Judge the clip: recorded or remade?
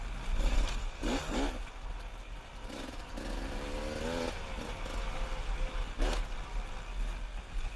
recorded